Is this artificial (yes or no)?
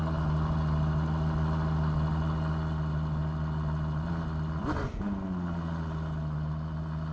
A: no